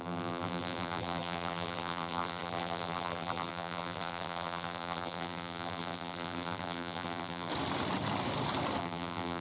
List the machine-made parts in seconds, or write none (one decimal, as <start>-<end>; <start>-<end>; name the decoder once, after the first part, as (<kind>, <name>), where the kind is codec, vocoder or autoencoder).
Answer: 0.0-7.5 (vocoder, BigVGAN v2); 8.8-9.4